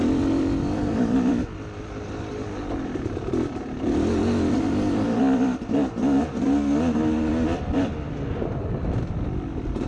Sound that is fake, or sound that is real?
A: fake